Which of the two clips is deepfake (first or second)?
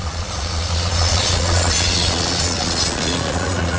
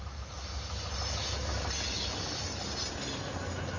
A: first